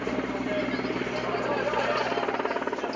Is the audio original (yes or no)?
yes